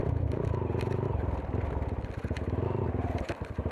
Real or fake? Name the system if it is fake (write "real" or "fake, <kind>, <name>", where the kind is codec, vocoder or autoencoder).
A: real